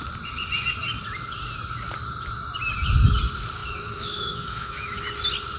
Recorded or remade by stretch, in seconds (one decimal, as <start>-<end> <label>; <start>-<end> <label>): 0.0-3.6 recorded; 3.6-5.0 remade; 5.0-5.6 recorded